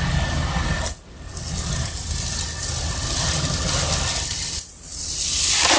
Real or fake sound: real